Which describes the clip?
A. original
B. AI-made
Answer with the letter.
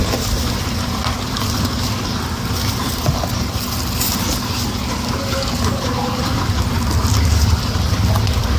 A